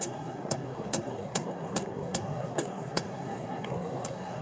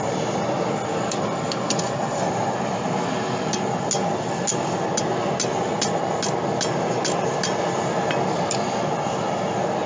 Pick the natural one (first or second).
second